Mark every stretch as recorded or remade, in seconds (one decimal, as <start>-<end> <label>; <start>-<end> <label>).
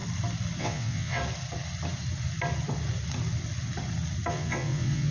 0.0-0.6 recorded; 0.6-1.2 remade; 1.2-4.3 recorded; 4.3-5.1 remade